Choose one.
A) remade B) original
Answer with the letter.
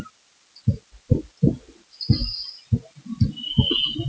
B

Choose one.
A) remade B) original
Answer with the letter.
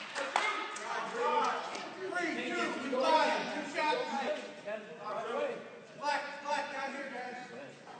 A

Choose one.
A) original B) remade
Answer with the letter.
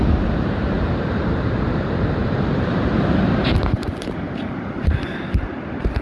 B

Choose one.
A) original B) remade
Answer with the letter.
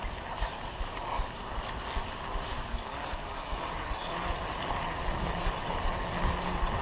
A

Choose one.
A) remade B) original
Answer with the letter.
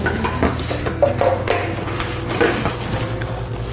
B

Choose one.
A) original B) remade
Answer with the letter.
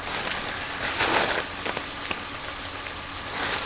A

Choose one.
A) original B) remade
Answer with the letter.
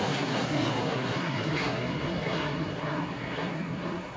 B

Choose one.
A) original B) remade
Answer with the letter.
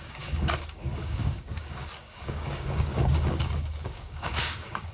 B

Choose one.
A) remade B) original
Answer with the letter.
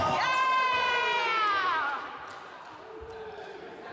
A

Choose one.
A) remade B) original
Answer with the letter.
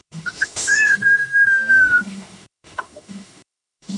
A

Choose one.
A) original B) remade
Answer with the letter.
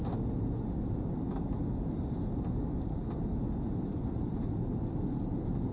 A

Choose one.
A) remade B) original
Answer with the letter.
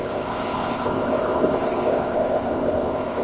A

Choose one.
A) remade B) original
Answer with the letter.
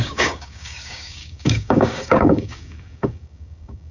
A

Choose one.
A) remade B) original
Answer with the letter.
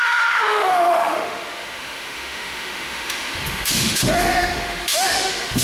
A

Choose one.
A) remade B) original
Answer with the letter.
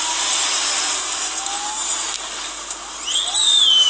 B